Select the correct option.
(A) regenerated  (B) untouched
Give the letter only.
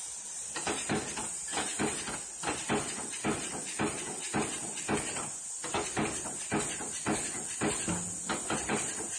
B